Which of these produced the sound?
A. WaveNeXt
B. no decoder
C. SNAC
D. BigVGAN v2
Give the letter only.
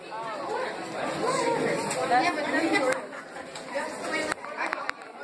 B